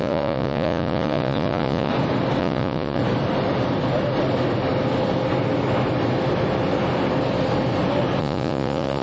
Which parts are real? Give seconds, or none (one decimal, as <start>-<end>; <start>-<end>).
1.9-2.4; 3.0-8.2